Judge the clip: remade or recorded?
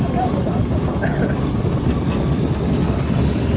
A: recorded